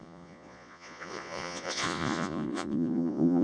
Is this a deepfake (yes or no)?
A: yes